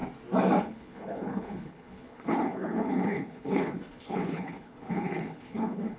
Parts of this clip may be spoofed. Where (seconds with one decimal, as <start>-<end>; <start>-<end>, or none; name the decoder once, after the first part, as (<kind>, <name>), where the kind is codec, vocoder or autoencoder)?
0.6-6.0 (codec, HILCodec)